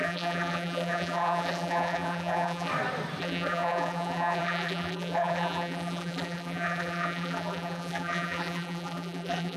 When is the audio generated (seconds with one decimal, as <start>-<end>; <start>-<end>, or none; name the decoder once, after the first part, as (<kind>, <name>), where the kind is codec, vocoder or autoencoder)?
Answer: 0.0-2.7 (vocoder, BigVGAN v2); 3.2-9.6